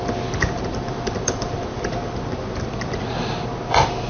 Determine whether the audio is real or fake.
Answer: real